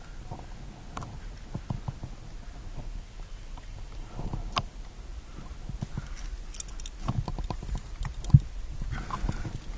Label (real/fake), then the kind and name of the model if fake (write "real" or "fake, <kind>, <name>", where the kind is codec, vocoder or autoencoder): real